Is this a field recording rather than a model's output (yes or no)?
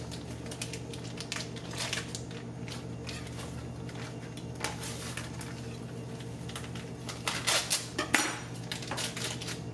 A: yes